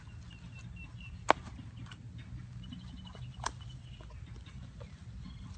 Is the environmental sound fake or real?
real